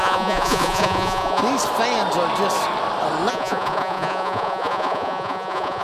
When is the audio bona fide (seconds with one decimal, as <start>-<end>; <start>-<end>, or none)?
1.4-3.3

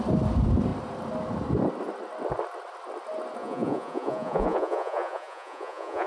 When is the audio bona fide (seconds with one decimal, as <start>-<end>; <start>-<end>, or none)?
0.0-3.4

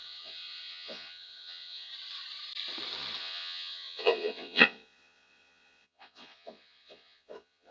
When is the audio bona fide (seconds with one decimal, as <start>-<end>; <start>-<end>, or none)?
1.9-3.2

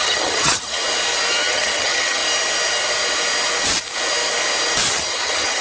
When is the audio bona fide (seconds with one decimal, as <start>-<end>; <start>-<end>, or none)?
0.8-1.4; 2.2-4.9

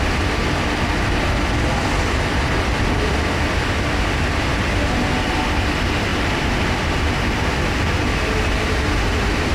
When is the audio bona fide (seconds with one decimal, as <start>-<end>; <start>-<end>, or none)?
0.0-9.5

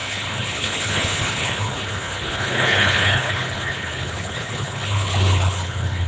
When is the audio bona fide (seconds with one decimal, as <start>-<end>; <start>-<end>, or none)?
none